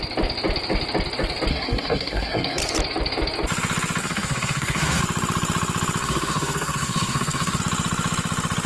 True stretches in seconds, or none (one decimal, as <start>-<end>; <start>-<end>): 0.0-1.5; 2.6-4.0; 5.0-6.0; 7.6-8.7